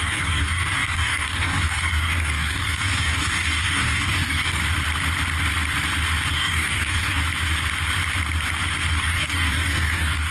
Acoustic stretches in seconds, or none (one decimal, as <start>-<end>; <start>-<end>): 4.6-6.3; 7.2-8.9

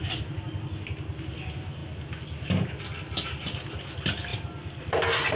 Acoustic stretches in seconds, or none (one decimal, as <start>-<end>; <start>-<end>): 0.0-5.4

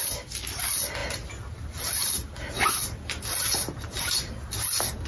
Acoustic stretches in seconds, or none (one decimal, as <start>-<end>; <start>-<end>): 0.0-5.1

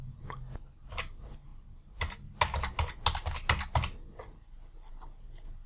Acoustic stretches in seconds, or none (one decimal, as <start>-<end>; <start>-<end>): 0.0-5.7

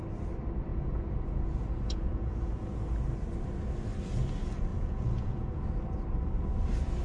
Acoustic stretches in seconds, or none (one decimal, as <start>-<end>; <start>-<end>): 0.0-0.7; 2.7-4.7; 5.6-7.0